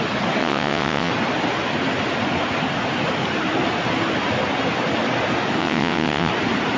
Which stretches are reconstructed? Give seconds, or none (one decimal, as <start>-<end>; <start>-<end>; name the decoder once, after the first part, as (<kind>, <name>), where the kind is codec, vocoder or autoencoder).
0.4-1.1 (vocoder, WaveNeXt); 5.6-6.3